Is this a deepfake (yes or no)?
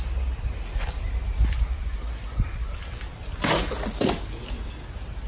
no